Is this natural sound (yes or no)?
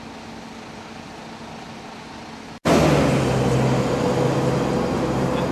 yes